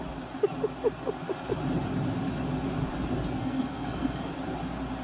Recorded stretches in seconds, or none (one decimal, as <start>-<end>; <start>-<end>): 0.0-3.4; 4.3-5.0